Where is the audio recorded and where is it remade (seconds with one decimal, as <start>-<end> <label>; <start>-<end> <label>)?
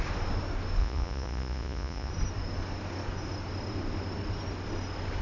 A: 0.0-0.8 recorded; 0.8-2.1 remade; 2.1-5.2 recorded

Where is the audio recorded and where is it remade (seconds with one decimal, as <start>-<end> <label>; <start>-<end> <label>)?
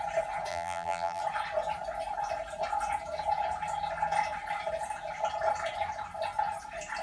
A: 0.0-0.5 recorded; 0.5-1.2 remade; 1.2-7.0 recorded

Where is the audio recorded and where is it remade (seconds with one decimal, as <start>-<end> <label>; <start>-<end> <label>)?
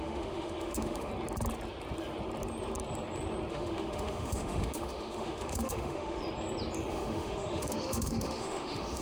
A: 0.0-1.1 remade; 1.1-3.5 recorded; 3.5-6.2 remade; 6.2-6.9 recorded; 6.9-9.0 remade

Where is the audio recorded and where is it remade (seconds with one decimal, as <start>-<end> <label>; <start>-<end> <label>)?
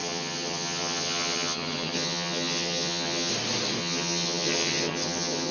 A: 0.0-3.3 remade; 3.3-3.8 recorded; 3.8-5.5 remade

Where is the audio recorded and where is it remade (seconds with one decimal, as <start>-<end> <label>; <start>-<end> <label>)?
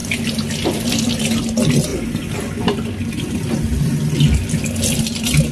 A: 0.0-5.5 recorded